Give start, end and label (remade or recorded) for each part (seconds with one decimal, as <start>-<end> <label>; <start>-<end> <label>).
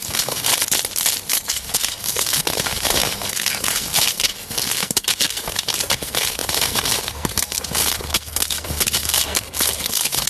0.0-0.5 remade; 0.5-1.3 recorded; 1.3-10.3 remade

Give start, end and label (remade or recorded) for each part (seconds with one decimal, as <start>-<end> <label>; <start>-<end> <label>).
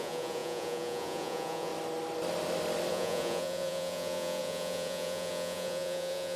0.0-1.7 remade; 1.7-2.9 recorded; 2.9-6.4 remade